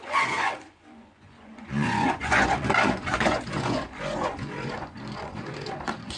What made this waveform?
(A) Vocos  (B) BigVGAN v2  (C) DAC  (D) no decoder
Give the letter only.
A